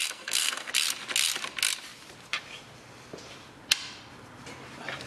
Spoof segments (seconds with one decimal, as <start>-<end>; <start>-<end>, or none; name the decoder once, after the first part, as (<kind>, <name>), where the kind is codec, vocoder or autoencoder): 0.0-0.7 (codec, SNAC)